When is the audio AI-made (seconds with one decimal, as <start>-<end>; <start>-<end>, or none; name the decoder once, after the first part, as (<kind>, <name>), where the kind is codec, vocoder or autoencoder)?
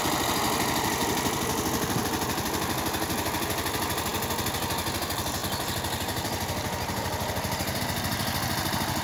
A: 0.0-4.1 (vocoder, BigVGAN v2); 5.0-9.0